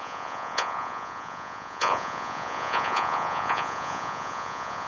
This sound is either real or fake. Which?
fake